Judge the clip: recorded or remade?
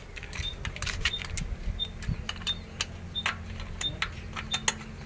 recorded